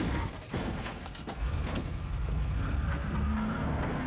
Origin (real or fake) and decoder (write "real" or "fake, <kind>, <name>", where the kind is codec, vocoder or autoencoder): fake, codec, SNAC